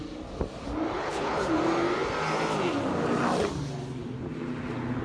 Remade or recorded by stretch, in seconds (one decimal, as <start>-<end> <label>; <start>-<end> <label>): 0.0-1.0 recorded; 1.0-1.5 remade; 1.5-5.0 recorded